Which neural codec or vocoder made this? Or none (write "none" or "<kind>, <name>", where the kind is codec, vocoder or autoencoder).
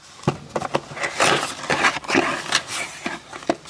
none